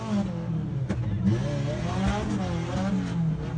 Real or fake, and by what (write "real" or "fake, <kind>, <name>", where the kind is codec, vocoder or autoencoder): real